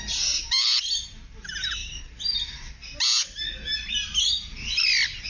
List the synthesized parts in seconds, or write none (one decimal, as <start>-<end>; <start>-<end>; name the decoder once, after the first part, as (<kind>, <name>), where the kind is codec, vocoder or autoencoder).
none